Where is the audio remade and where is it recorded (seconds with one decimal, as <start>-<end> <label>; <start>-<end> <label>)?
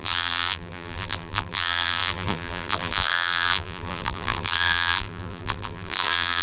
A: 0.0-6.4 remade